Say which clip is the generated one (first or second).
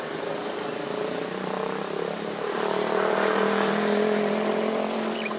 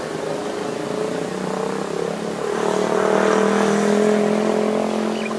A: first